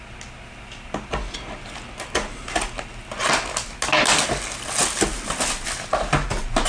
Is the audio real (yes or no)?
yes